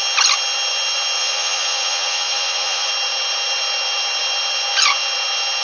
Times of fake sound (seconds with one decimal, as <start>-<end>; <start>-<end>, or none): 1.2-2.9